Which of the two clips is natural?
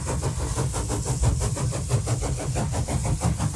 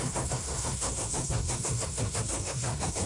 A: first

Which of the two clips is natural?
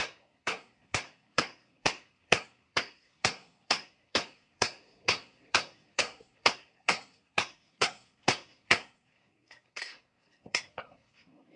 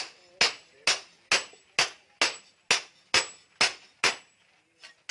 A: second